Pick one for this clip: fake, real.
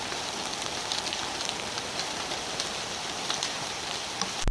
fake